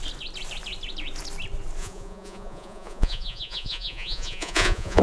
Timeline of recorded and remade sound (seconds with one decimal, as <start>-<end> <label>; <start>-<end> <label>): 0.0-1.8 recorded; 1.8-5.0 remade